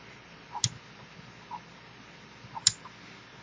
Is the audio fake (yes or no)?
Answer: no